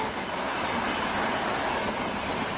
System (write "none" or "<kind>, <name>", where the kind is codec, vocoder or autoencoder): none